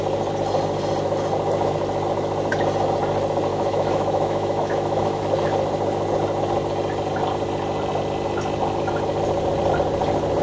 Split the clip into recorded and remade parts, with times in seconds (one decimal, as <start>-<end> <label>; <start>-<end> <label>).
0.0-3.5 recorded; 3.5-5.2 remade; 5.2-10.4 recorded